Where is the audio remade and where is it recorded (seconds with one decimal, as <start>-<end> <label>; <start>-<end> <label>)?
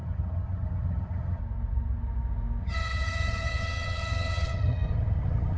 0.0-1.4 remade; 1.4-2.6 recorded; 2.6-5.6 remade